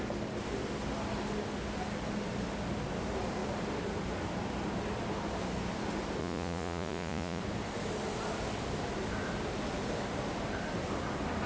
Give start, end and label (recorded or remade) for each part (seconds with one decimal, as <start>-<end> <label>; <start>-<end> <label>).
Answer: 0.0-6.2 recorded; 6.2-7.4 remade; 7.4-11.5 recorded